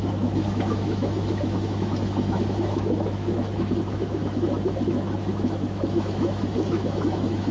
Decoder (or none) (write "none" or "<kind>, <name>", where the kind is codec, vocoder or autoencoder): autoencoder, DAC-VAE